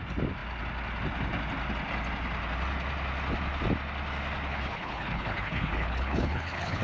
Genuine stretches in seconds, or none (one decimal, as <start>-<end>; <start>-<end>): 0.0-4.5